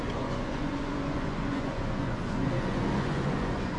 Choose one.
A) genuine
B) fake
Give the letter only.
B